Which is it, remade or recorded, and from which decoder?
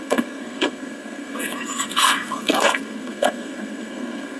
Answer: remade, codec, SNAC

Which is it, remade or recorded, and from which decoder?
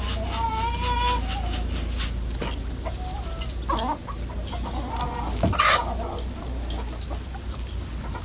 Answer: recorded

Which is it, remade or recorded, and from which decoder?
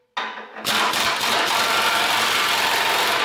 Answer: recorded